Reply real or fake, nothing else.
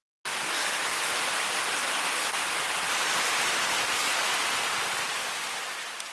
real